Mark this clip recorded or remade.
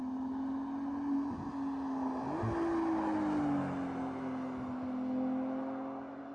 recorded